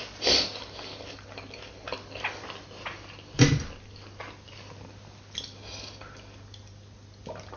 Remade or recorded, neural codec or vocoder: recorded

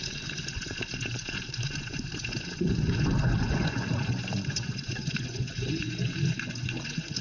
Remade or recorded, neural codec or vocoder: remade, vocoder, Vocos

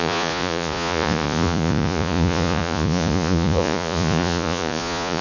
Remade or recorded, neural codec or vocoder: remade, vocoder, Vocos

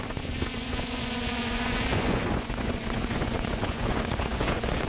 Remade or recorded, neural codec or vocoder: remade, vocoder, Vocos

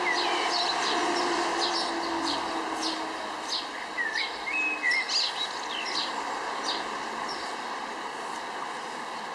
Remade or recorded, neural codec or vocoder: recorded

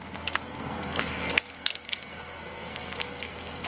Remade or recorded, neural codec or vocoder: remade, codec, SNAC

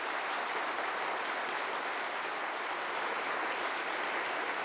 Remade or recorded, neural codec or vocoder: recorded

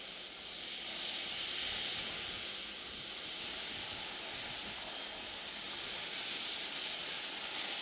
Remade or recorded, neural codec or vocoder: recorded